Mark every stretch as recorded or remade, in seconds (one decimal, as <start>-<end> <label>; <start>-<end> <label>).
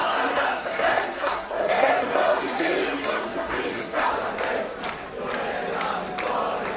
0.0-4.1 remade; 4.1-6.8 recorded